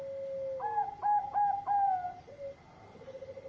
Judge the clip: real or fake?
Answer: real